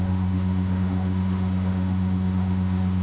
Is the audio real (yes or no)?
no